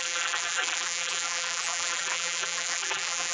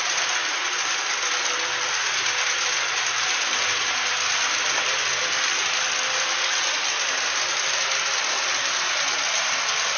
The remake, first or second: first